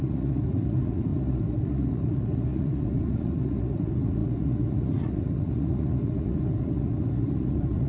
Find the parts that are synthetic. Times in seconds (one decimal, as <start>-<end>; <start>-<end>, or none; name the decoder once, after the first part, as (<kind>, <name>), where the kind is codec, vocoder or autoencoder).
0.0-7.9 (vocoder, Vocos)